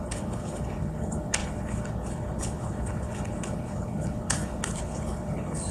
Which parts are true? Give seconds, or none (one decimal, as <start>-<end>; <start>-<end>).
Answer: none